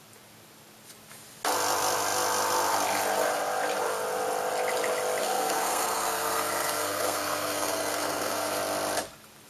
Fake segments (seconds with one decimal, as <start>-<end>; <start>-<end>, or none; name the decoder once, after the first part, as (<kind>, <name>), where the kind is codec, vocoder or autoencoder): 5.2-8.5 (codec, SNAC)